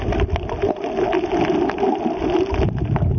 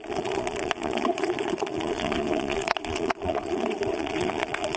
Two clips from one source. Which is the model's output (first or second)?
second